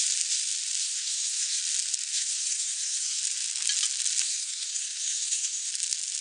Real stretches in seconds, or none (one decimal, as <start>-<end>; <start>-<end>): 0.0-0.8; 1.6-2.1; 3.2-4.2; 5.7-6.2